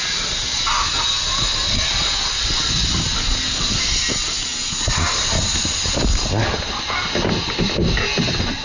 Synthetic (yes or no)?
no